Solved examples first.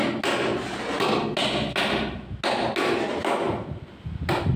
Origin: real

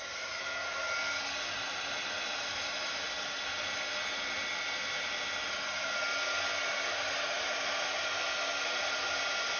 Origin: real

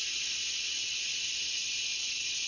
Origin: real